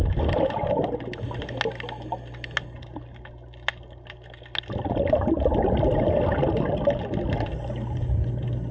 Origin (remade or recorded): recorded